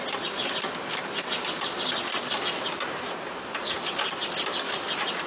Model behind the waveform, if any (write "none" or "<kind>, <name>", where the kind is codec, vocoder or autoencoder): none